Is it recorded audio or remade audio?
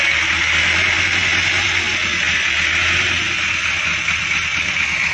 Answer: recorded